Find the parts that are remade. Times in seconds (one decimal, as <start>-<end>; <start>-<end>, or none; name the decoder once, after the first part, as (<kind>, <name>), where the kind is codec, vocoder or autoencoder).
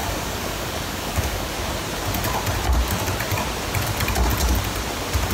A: 0.0-1.7 (codec, DAC)